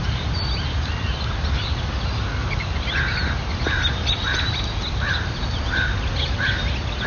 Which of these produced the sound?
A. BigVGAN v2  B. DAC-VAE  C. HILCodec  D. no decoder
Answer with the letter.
D